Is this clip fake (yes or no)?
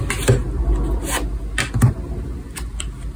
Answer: no